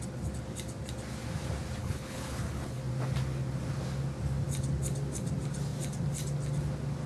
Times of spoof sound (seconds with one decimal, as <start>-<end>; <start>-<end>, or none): 1.8-2.8